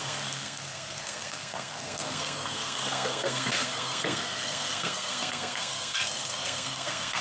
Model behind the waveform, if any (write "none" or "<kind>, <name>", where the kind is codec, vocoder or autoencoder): codec, SNAC